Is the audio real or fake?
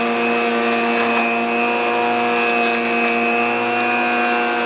real